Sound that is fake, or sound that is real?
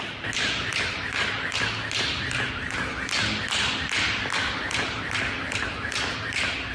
real